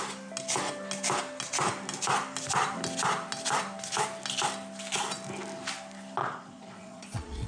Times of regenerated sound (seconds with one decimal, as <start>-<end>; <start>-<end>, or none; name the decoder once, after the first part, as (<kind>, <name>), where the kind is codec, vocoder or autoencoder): 6.2-7.5 (vocoder, Vocos)